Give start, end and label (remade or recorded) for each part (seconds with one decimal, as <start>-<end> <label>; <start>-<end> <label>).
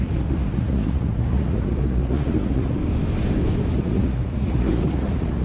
0.0-2.8 remade; 2.8-3.7 recorded; 3.7-5.4 remade